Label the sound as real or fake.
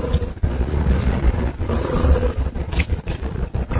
fake